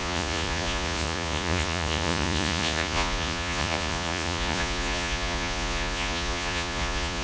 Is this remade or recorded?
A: remade